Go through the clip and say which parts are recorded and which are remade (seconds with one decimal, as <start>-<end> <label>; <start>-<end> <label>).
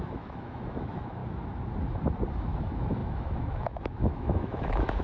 0.0-1.2 remade; 1.2-2.3 recorded; 2.3-5.0 remade